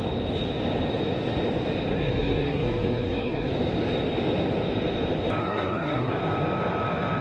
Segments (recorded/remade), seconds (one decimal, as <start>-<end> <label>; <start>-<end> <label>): 0.0-1.9 recorded; 1.9-3.5 remade; 3.5-5.4 recorded; 5.4-6.1 remade; 6.1-7.2 recorded